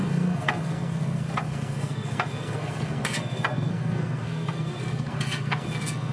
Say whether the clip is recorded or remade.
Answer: remade